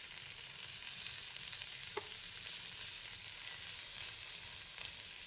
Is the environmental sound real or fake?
real